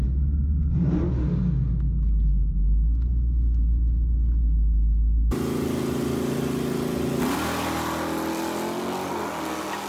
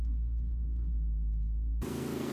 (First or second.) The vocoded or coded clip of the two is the second